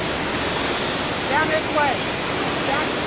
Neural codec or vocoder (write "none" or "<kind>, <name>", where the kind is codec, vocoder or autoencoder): none